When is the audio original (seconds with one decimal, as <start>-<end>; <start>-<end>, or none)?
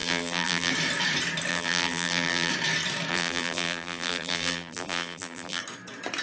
0.7-1.5; 2.5-3.1; 5.6-6.2